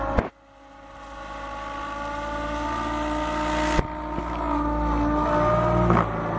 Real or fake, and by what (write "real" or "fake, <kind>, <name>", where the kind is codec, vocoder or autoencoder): real